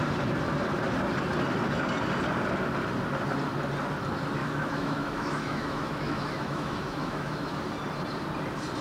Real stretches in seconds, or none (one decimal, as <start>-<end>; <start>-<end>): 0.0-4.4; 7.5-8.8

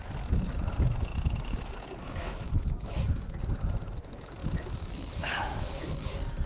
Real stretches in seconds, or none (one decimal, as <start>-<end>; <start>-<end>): 0.0-1.1; 3.0-4.4; 6.1-6.5

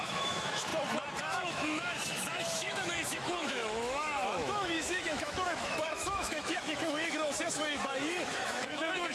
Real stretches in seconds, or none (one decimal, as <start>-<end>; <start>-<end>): 0.7-1.2